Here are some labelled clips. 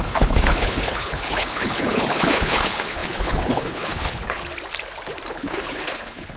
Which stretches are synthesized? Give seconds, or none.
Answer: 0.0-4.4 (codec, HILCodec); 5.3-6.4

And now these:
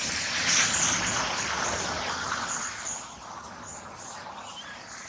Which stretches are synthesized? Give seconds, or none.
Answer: none

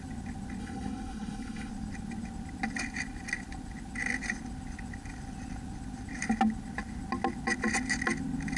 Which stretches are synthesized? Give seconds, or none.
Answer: 0.6-1.7 (codec, HILCodec)

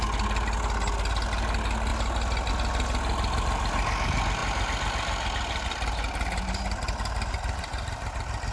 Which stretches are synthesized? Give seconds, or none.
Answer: none

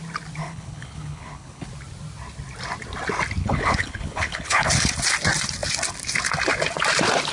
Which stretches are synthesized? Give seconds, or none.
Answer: 0.4-1.7 (codec, HILCodec); 3.4-4.9

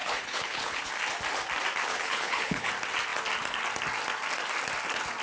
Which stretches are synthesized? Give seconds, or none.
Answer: 0.0-0.9 (codec, HILCodec); 1.9-2.7

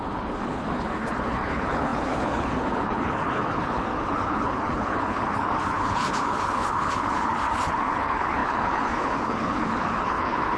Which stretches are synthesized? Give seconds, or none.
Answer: 0.0-10.6 (codec, HILCodec)

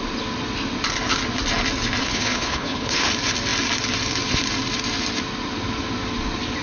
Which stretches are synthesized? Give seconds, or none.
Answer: 2.0-3.1 (codec, HILCodec)